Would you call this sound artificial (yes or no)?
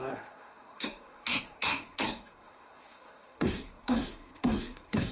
yes